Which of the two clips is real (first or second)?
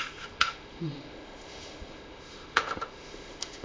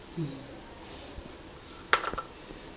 second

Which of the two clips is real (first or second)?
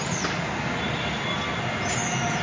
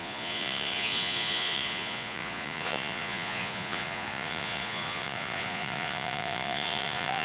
first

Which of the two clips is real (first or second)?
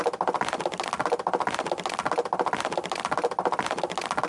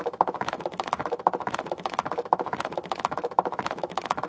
first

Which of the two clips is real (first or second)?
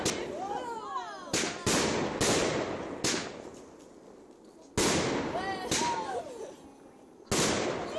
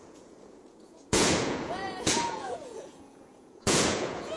first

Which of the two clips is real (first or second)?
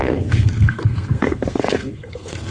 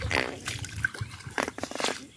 second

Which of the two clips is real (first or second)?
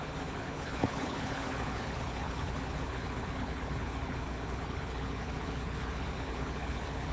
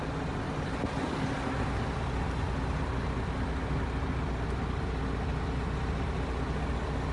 second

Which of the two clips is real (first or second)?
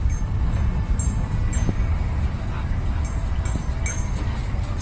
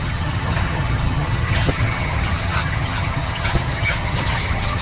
first